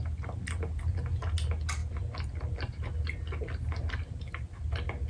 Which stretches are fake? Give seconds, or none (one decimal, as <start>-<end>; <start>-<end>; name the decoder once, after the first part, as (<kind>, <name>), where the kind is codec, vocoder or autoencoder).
none

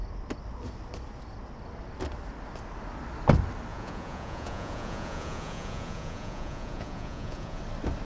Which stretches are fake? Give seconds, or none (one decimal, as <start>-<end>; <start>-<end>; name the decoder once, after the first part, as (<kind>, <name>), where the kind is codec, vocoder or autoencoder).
3.7-7.6 (vocoder, Vocos)